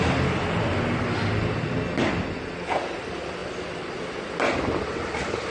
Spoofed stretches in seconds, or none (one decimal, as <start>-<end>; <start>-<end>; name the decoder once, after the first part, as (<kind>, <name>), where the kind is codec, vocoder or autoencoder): none